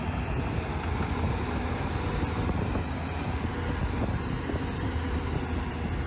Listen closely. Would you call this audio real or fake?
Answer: real